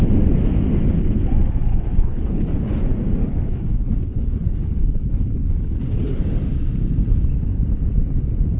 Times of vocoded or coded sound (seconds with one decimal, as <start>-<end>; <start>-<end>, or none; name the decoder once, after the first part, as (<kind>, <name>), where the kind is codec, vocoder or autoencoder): 1.7-2.6 (codec, HILCodec); 3.2-6.2